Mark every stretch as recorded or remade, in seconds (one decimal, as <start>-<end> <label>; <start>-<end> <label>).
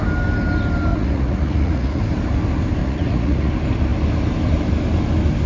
0.0-0.9 recorded; 0.9-2.0 remade; 2.0-2.8 recorded; 2.8-3.5 remade; 3.5-5.5 recorded